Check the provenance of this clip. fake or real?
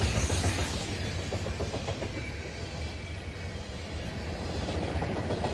real